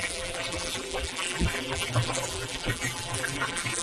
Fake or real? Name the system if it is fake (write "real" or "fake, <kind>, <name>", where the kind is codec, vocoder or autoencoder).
fake, vocoder, BigVGAN v2